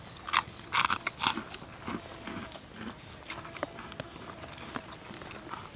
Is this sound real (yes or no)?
yes